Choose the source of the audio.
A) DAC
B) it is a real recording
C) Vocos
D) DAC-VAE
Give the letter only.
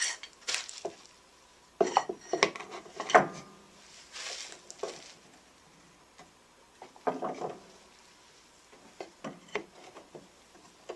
B